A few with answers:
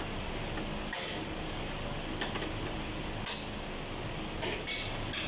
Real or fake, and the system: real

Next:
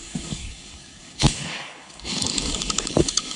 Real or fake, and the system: fake, codec, DAC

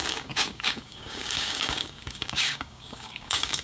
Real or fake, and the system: fake, codec, DAC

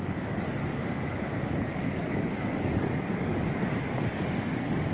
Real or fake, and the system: fake, codec, DAC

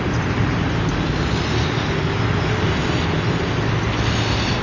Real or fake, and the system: real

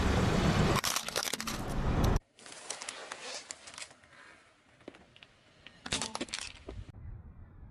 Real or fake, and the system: real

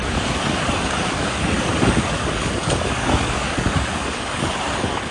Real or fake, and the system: fake, codec, DAC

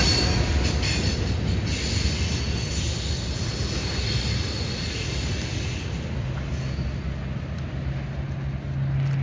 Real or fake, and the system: real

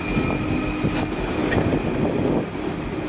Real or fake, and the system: real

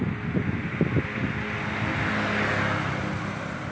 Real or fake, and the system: real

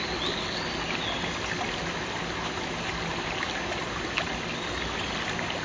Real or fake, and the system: real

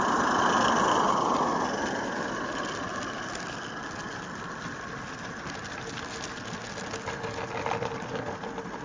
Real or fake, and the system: real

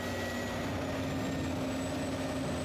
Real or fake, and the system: real